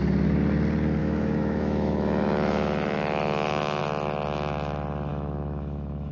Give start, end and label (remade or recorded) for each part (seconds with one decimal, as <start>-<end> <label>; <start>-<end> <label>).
0.0-1.0 recorded; 1.0-3.8 remade; 3.8-5.1 recorded; 5.1-6.1 remade